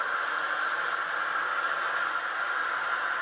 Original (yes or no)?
yes